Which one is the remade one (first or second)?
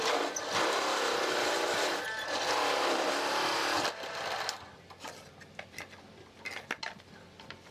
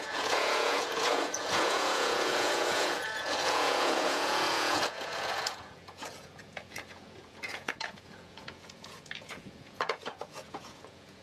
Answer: second